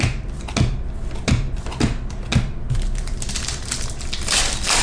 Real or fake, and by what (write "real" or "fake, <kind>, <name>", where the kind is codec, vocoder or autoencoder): real